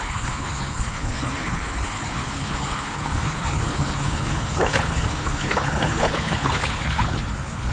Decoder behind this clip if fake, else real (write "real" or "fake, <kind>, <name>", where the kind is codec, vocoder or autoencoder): fake, codec, HILCodec